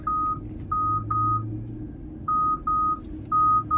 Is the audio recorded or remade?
recorded